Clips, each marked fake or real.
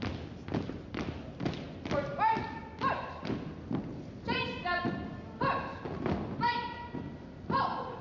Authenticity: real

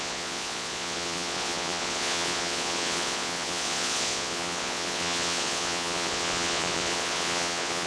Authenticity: fake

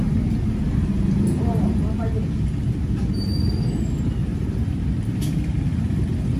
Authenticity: real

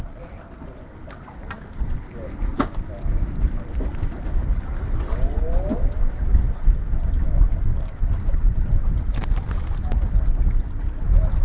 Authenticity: real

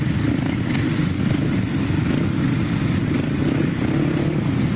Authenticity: real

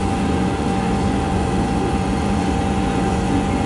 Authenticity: fake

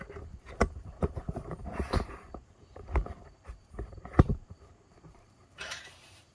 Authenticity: fake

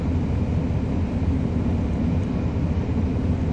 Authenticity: real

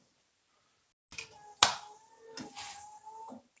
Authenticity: real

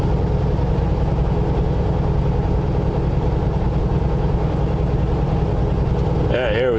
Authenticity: real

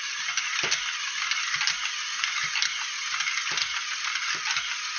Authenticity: real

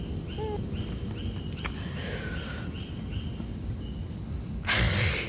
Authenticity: real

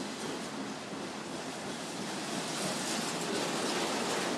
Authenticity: real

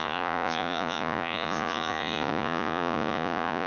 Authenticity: fake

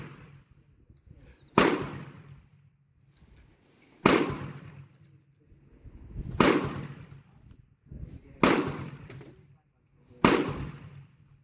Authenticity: real